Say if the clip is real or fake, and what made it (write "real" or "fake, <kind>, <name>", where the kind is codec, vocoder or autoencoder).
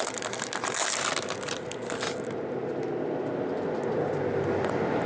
real